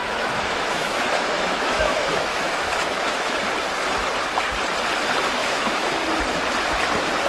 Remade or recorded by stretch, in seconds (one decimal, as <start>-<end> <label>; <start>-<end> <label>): 0.0-3.4 remade; 3.4-5.4 recorded; 5.4-6.0 remade; 6.0-7.3 recorded